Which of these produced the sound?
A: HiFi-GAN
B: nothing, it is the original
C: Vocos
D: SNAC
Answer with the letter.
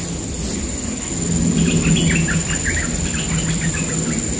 B